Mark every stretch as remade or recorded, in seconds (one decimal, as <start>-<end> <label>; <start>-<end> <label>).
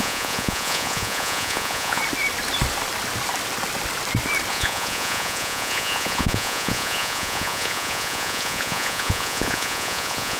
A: 0.0-2.0 remade; 2.0-4.5 recorded; 4.5-10.4 remade